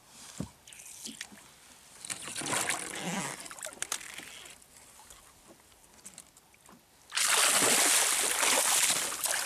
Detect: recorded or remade recorded